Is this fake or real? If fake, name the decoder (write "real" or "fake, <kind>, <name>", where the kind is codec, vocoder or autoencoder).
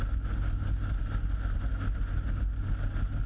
real